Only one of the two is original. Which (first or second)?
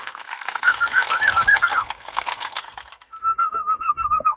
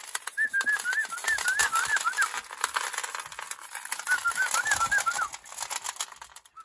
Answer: second